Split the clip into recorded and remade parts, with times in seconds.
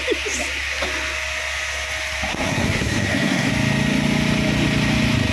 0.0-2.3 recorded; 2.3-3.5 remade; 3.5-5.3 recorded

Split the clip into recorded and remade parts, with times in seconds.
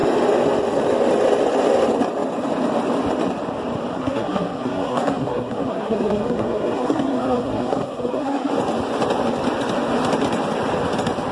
0.0-3.9 recorded; 3.9-8.5 remade; 8.5-11.3 recorded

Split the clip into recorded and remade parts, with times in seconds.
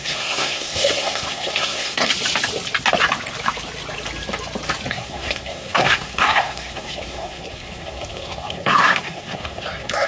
0.0-2.1 remade; 2.1-4.9 recorded; 4.9-10.1 remade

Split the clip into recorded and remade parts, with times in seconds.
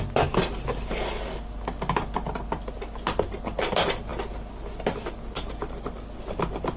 0.0-6.8 recorded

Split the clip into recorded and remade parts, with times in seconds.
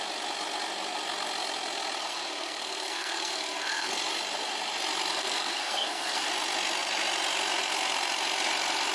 0.0-2.0 recorded; 2.0-3.9 remade; 3.9-5.1 recorded; 5.1-6.3 remade; 6.3-8.9 recorded